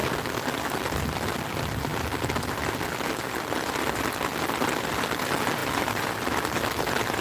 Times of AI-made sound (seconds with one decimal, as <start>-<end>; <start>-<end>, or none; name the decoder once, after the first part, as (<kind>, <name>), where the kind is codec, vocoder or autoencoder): 5.6-6.3 (vocoder, BigVGAN v2)